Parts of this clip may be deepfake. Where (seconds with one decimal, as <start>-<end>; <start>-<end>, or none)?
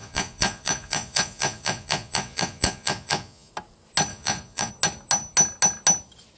0.0-3.5; 4.1-4.7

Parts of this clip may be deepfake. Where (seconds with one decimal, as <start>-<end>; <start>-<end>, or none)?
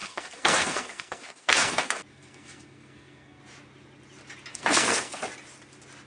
0.0-3.4; 4.5-5.2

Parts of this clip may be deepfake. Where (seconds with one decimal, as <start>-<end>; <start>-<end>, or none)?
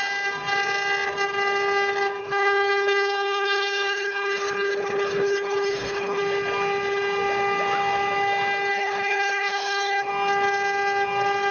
2.2-6.2; 8.7-10.1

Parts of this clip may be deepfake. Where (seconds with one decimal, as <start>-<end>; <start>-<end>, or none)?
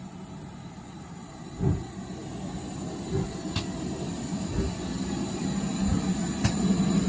none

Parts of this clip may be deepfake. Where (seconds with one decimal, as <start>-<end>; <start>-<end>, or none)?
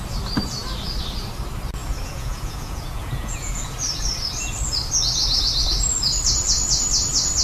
1.8-3.7